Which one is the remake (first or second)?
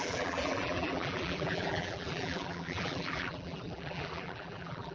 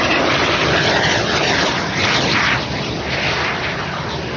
first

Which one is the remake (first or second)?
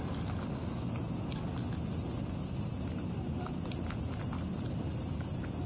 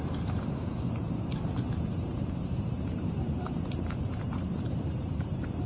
second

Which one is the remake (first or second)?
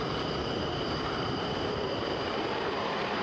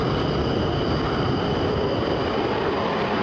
first